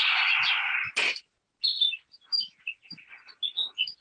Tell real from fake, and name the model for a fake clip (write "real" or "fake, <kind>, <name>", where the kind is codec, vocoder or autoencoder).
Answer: real